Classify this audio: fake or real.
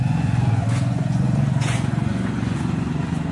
fake